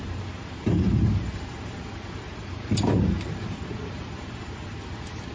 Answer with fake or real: fake